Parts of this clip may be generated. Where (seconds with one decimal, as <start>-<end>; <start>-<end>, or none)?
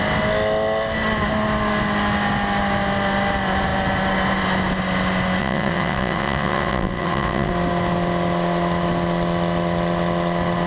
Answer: 5.4-7.5